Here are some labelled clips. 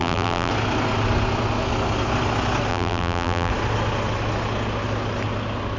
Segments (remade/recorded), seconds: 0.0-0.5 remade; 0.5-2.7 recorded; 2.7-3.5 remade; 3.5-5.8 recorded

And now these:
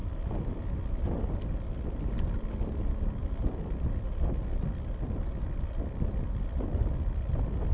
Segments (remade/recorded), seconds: 0.0-7.7 recorded

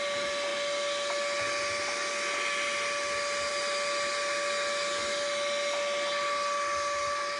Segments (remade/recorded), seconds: 0.0-7.4 recorded

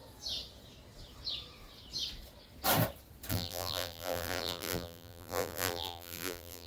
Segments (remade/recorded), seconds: 0.0-3.3 recorded; 3.3-6.7 remade